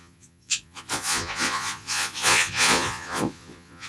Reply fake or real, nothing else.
fake